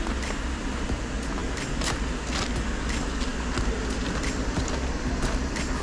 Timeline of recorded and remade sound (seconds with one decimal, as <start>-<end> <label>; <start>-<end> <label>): 0.0-5.8 recorded